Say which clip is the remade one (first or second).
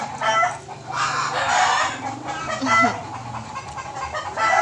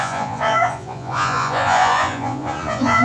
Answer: second